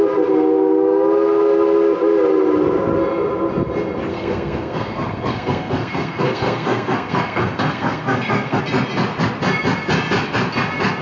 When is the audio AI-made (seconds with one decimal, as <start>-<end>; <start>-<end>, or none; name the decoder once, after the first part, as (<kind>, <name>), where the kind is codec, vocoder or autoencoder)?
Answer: 4.1-8.6 (codec, SNAC)